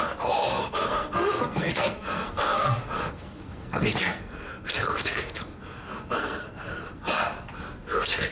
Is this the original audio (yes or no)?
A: no